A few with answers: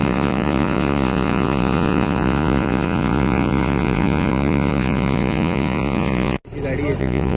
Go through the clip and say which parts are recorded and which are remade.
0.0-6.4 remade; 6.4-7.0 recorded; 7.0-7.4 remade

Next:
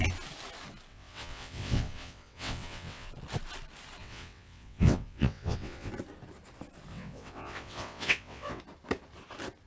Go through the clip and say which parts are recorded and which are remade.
0.0-0.9 recorded; 0.9-3.1 remade; 3.1-4.0 recorded; 4.0-5.9 remade; 5.9-6.9 recorded; 6.9-8.6 remade; 8.6-9.7 recorded